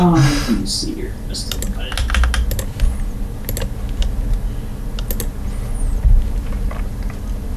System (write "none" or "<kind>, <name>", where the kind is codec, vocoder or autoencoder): none